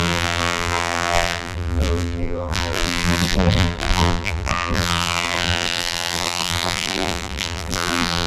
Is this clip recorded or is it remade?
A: remade